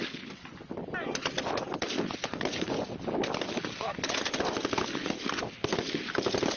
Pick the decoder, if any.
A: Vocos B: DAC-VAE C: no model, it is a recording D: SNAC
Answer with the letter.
C